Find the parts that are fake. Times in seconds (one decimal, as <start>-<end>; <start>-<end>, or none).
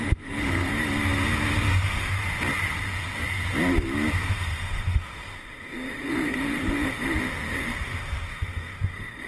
0.0-0.7; 1.6-2.2; 4.3-9.3